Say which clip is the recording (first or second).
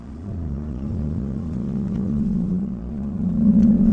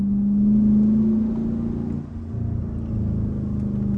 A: second